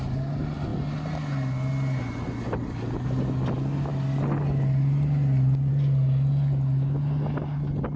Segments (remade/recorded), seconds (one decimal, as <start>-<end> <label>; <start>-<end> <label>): 0.0-8.0 recorded

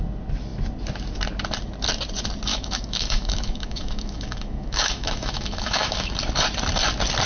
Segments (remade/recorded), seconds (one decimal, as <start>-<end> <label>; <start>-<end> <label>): 0.0-2.5 recorded; 2.5-6.1 remade; 6.1-7.3 recorded

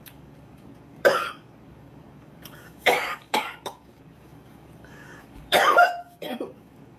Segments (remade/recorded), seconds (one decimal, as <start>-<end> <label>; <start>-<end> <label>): 0.0-7.0 remade